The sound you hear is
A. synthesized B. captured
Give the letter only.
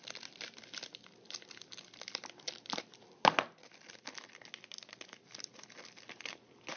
B